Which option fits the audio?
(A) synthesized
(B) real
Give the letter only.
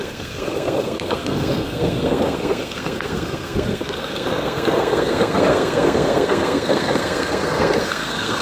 A